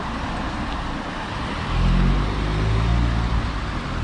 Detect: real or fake real